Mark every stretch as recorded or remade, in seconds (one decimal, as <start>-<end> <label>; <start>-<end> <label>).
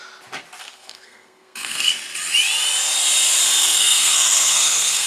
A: 0.0-0.6 recorded; 0.6-1.9 remade; 1.9-3.6 recorded; 3.6-5.1 remade